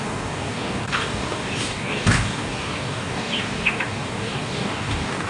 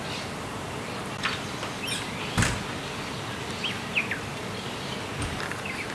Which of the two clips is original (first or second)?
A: second